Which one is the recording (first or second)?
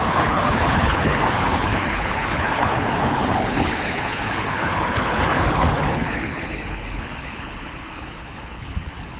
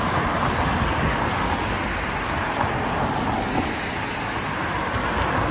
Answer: second